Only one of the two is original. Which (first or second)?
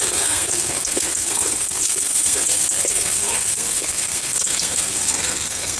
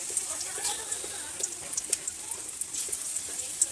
second